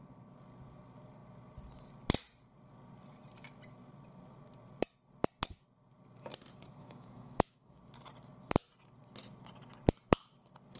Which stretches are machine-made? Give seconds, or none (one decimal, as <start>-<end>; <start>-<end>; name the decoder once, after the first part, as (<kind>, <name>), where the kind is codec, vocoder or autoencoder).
6.8-7.8 (autoencoder, DAC-VAE)